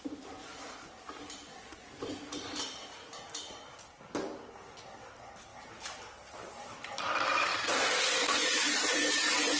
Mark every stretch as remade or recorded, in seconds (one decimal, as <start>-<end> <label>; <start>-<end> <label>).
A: 0.0-0.4 recorded; 0.4-1.2 remade; 1.2-5.5 recorded; 5.5-6.0 remade; 6.0-7.5 recorded; 7.5-9.6 remade